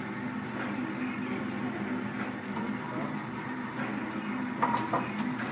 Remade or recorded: recorded